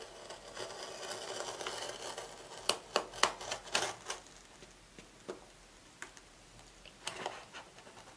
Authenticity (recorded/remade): recorded